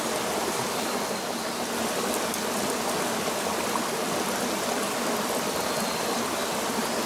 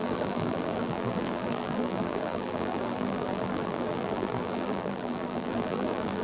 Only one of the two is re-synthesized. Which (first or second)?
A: second